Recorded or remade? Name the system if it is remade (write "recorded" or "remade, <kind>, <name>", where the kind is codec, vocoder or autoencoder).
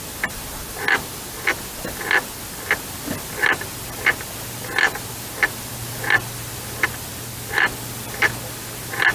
recorded